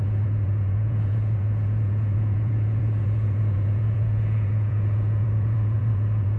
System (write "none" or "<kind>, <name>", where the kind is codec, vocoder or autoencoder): vocoder, Vocos